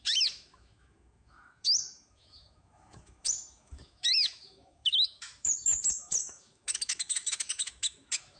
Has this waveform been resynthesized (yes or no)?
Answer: yes